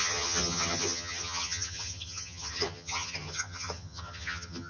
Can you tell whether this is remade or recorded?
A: remade